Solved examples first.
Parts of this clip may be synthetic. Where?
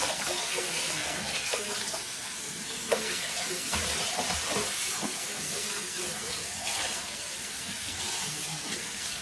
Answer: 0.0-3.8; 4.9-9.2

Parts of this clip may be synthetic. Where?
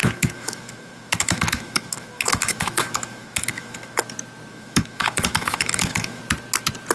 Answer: 0.0-4.0; 4.5-6.2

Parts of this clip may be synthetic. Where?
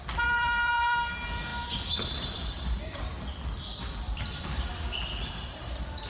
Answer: 0.0-6.1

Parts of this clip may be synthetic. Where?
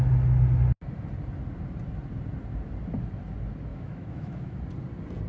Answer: 3.7-4.6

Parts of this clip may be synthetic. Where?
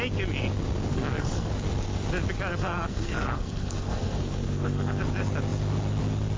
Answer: 0.9-1.5; 2.5-5.0